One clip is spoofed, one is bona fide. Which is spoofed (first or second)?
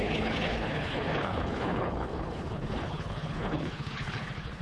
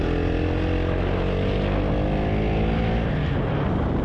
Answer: first